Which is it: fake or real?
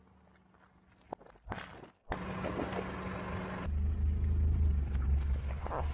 real